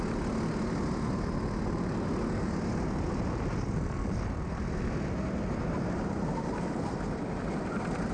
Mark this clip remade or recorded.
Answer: recorded